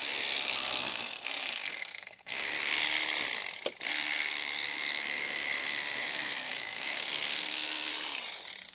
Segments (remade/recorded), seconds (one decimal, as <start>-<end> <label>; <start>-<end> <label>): 0.0-2.8 remade; 2.8-3.9 recorded; 3.9-7.9 remade; 7.9-8.7 recorded